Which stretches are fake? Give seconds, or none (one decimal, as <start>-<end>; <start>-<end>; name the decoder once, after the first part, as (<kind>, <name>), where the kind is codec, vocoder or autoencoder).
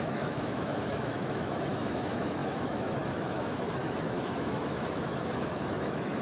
0.0-6.2 (autoencoder, DAC-VAE)